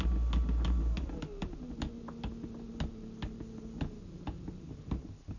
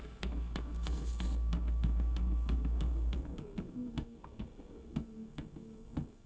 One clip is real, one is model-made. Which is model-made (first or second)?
second